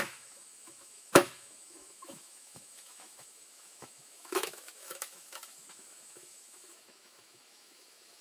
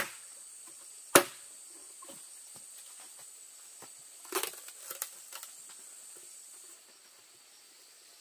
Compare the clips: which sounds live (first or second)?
second